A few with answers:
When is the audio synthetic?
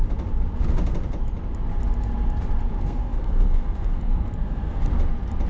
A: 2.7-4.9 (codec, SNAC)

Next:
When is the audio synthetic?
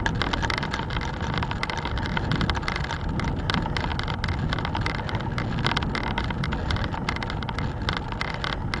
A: none